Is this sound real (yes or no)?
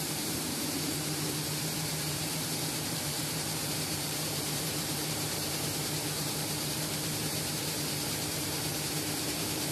no